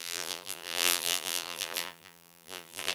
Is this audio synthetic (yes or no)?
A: yes